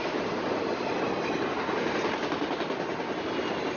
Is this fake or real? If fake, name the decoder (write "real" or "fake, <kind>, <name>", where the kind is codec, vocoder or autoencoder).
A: real